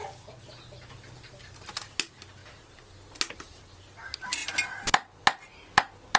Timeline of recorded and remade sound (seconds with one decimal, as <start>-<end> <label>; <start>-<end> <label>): 0.0-6.2 recorded